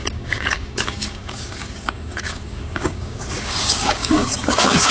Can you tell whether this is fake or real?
fake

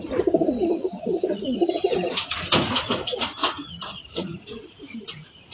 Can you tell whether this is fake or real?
fake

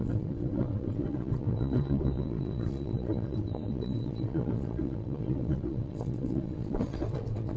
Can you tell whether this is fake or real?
fake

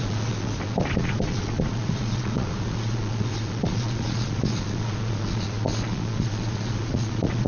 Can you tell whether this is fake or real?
fake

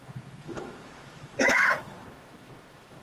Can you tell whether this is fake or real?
fake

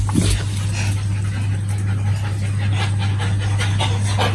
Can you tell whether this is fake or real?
real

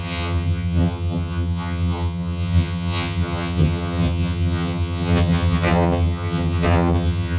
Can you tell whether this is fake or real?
fake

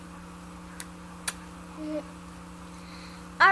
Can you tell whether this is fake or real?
real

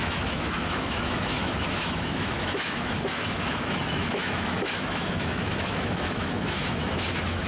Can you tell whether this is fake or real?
fake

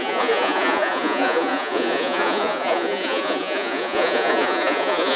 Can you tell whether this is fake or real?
fake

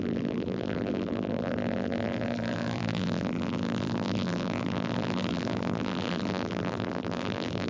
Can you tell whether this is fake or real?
fake